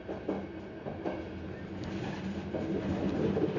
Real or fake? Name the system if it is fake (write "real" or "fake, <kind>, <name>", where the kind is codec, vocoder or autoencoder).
real